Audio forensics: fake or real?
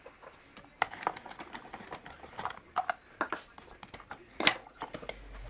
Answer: real